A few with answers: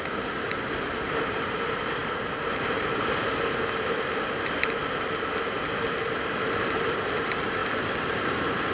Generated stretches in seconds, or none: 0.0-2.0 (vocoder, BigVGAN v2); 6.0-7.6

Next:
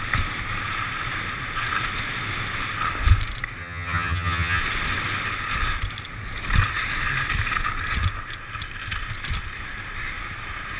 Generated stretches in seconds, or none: 3.6-4.6 (vocoder, HiFi-GAN)